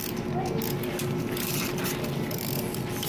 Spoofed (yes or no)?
no